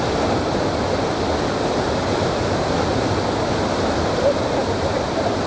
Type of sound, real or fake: real